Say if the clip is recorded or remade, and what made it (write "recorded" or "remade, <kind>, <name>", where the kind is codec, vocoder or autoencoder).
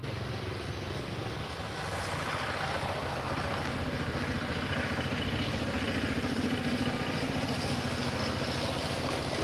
recorded